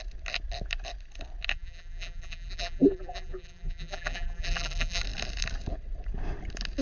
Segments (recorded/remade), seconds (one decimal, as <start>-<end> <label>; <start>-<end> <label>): 0.0-1.5 recorded; 1.5-5.0 remade; 5.0-6.8 recorded